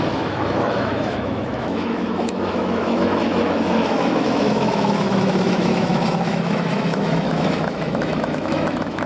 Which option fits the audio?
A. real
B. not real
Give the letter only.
B